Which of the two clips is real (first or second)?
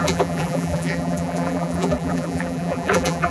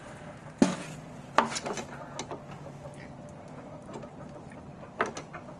second